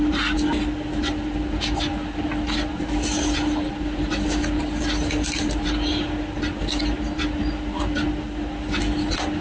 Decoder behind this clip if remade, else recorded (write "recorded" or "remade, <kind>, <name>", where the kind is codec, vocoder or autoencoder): recorded